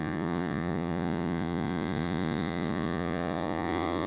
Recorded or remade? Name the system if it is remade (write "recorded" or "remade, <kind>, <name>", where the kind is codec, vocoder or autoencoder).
remade, vocoder, Vocos